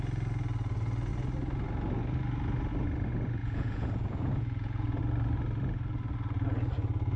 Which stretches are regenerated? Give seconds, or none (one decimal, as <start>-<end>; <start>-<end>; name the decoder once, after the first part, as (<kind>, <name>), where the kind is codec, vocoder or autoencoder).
3.4-5.0 (vocoder, Vocos)